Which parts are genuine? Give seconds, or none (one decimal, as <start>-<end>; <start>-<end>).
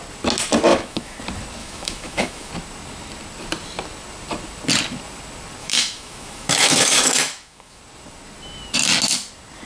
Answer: 0.0-0.7; 1.2-1.6; 2.5-5.6; 7.8-9.7